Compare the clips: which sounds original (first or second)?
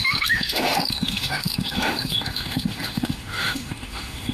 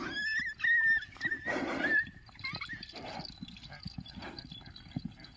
second